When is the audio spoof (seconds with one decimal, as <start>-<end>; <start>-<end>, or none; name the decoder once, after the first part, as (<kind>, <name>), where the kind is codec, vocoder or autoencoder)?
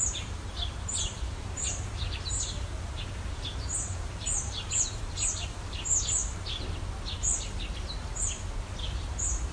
0.0-6.2 (vocoder, BigVGAN v2); 8.7-9.5